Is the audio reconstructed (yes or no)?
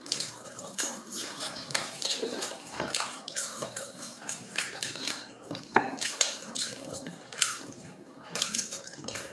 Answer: yes